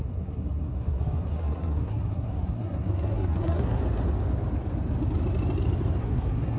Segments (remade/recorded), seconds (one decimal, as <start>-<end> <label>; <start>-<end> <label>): 0.0-3.8 remade; 3.8-6.0 recorded; 6.0-6.6 remade